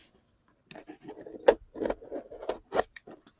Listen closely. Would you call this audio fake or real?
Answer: real